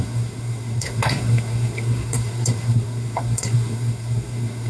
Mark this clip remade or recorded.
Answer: remade